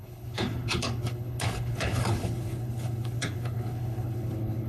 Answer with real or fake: fake